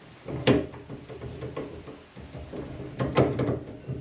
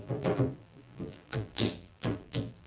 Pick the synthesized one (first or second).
second